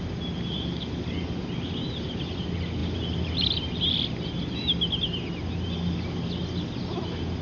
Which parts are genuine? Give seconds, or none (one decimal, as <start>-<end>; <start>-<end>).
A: 0.0-7.4